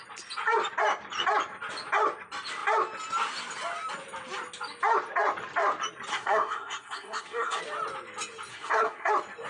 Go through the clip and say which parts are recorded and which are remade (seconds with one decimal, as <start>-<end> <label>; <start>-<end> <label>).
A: 0.0-6.1 recorded; 6.1-7.6 remade; 7.6-8.5 recorded; 8.5-9.1 remade; 9.1-9.5 recorded

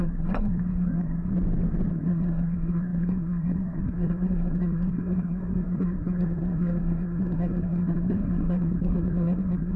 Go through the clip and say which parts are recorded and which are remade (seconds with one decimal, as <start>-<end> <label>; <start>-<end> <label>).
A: 0.0-1.3 remade; 1.3-1.9 recorded; 1.9-9.8 remade